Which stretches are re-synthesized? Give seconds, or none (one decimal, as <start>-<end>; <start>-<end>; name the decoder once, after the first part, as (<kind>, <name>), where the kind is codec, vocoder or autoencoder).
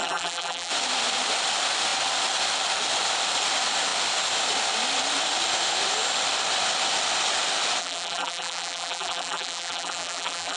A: 0.0-0.7 (vocoder, BigVGAN v2); 7.8-10.6